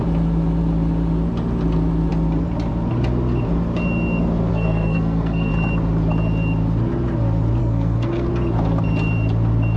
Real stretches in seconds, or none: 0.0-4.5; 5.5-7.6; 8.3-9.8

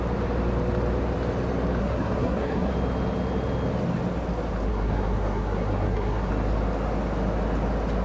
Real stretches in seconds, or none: 0.0-1.8; 2.7-4.7; 6.3-8.0

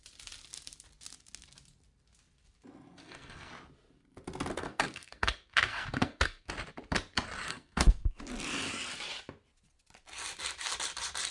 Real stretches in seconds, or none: 0.0-3.0; 3.5-4.5; 6.5-7.5; 8.2-11.3

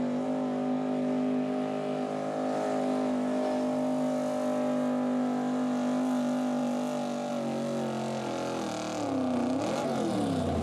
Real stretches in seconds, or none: 0.0-10.6

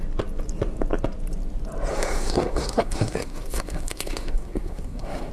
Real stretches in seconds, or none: 0.0-1.9

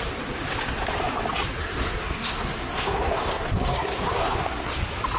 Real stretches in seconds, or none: 0.0-1.6; 4.7-5.2